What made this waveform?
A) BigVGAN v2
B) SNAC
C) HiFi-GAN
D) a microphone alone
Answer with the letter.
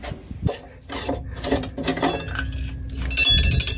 D